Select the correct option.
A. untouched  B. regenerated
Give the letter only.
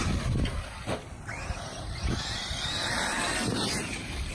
A